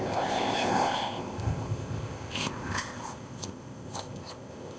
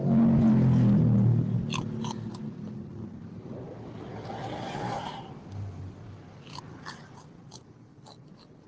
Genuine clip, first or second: second